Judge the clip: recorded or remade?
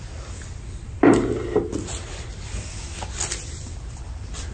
recorded